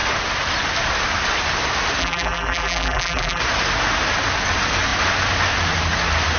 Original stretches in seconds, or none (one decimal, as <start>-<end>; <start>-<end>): 0.0-2.0; 3.4-6.4